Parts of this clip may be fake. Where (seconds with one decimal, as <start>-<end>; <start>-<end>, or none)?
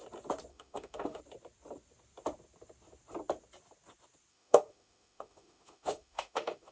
0.5-1.2; 4.3-6.7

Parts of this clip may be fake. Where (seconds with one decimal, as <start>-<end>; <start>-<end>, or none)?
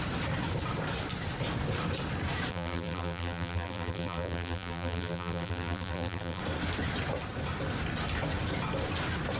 2.5-6.4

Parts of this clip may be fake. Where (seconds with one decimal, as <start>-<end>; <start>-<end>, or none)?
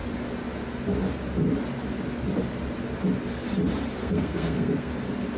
4.0-4.9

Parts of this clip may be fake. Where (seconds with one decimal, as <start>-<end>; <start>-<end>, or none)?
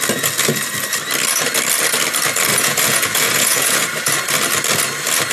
2.5-3.9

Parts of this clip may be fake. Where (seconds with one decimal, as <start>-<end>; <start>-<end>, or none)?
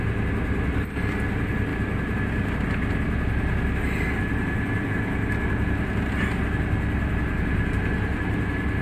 none